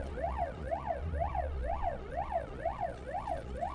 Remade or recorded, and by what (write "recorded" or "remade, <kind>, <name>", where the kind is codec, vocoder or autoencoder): remade, vocoder, Vocos